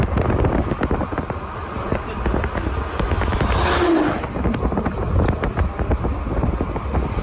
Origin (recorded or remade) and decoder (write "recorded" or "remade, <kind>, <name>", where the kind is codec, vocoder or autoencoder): recorded